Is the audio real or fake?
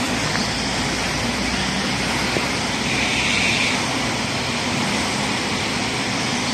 real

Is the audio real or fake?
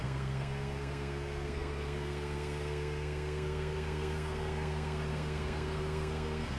fake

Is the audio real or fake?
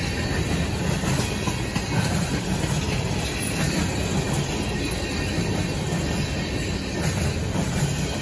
real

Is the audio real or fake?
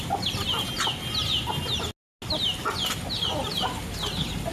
real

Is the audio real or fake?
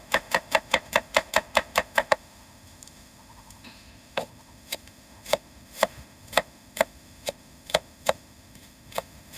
fake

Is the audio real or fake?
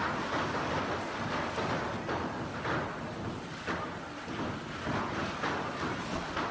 real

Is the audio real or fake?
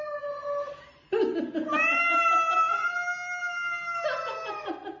real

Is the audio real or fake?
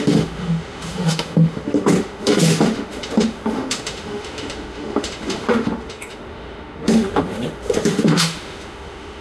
fake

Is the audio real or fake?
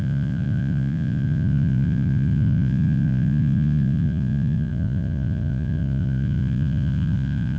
fake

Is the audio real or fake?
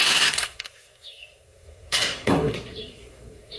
fake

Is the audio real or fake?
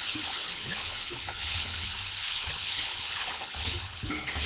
fake